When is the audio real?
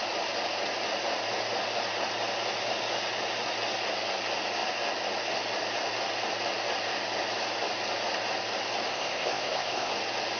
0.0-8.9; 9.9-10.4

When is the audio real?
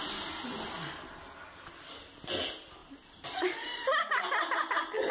0.0-5.1